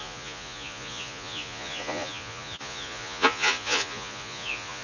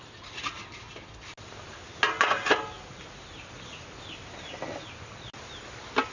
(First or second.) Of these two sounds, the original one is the second